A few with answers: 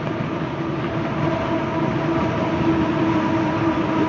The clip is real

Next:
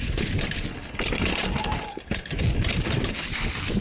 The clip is real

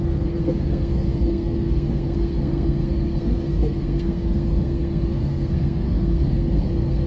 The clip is fake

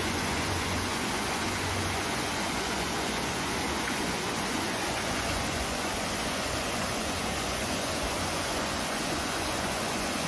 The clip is fake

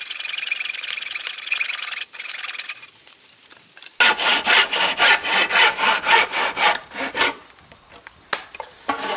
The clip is real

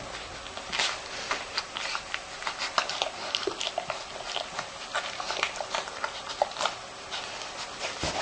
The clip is real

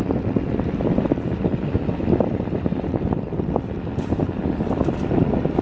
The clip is real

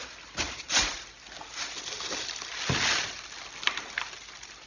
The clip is real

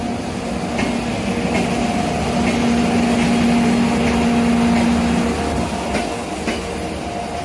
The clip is real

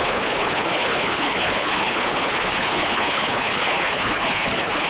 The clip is fake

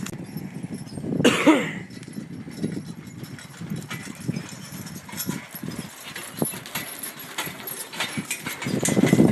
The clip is real